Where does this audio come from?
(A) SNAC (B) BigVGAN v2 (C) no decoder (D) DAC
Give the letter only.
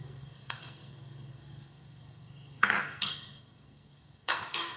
A